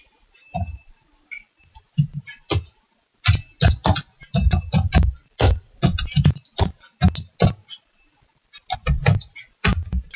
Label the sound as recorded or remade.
recorded